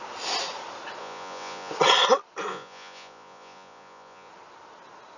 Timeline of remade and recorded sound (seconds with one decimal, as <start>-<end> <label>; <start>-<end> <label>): 0.0-1.0 recorded; 1.0-1.7 remade; 1.7-2.5 recorded; 2.5-4.3 remade; 4.3-5.2 recorded